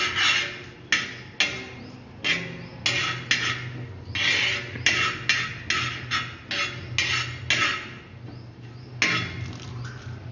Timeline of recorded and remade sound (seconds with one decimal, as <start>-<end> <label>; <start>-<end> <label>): 0.0-10.3 recorded